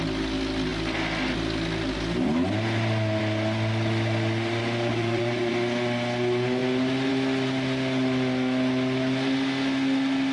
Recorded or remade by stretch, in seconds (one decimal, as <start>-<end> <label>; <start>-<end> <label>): 0.0-4.9 recorded; 4.9-5.5 remade; 5.5-10.3 recorded

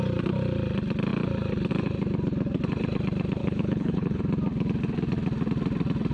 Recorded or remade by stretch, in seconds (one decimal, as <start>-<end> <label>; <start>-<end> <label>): 0.0-3.4 recorded; 3.4-4.2 remade; 4.2-6.1 recorded